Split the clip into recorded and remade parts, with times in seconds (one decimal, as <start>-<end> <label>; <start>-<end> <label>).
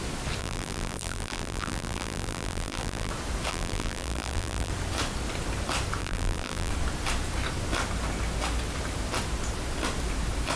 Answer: 0.0-0.4 recorded; 0.4-3.1 remade; 3.1-3.5 recorded; 3.5-4.7 remade; 4.7-6.0 recorded; 6.0-6.7 remade; 6.7-10.6 recorded